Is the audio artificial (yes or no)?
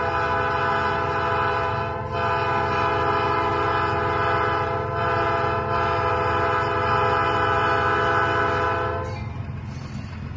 no